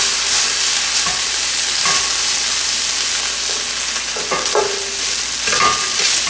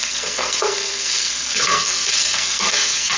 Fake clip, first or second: second